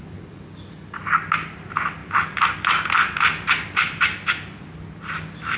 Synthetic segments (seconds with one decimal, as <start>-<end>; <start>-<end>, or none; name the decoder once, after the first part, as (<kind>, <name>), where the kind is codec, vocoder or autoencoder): none